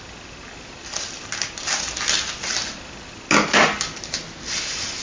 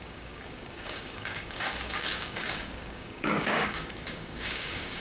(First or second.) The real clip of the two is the first